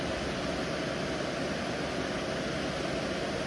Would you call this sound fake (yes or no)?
no